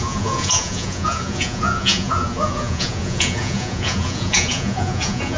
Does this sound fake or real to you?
fake